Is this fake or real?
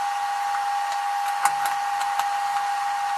real